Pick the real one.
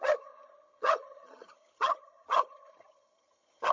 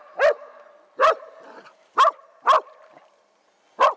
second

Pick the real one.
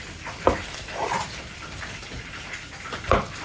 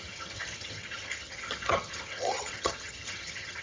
first